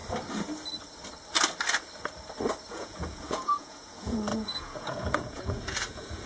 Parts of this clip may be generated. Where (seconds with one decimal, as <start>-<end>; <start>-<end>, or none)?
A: 2.7-6.3